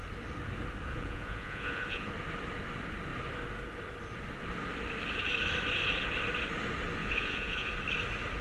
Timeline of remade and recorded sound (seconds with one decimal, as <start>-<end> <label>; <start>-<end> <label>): 0.0-0.9 recorded; 0.9-2.1 remade; 2.1-7.0 recorded; 7.0-7.7 remade; 7.7-8.4 recorded